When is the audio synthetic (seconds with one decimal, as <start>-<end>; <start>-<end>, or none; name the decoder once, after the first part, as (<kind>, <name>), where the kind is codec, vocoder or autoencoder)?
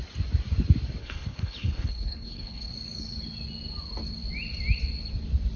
1.0-2.7 (codec, HILCodec)